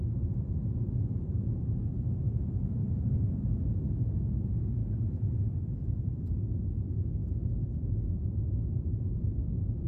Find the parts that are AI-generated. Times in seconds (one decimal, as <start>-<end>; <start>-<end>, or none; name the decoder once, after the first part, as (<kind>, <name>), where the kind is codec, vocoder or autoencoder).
none